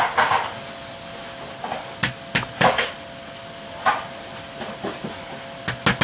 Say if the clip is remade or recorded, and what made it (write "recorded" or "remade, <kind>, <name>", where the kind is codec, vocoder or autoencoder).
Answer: recorded